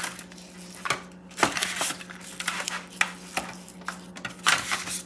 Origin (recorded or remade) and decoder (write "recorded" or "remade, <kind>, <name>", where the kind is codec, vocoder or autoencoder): recorded